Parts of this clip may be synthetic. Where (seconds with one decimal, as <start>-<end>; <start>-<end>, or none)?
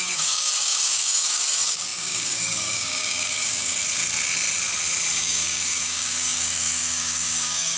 0.0-3.8; 5.2-7.8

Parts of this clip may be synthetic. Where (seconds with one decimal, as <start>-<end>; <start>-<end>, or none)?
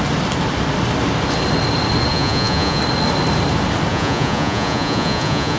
2.1-2.8; 3.9-5.6